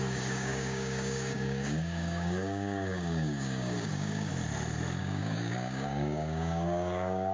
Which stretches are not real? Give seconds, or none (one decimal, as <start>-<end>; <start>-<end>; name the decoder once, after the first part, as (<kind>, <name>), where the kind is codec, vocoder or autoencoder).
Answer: 0.0-4.3 (codec, DAC); 5.0-7.3